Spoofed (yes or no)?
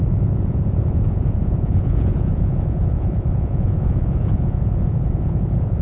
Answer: yes